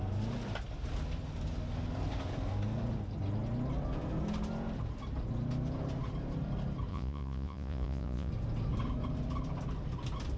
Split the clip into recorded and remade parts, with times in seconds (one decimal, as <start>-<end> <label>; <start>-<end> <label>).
0.0-6.9 recorded; 6.9-8.3 remade; 8.3-10.4 recorded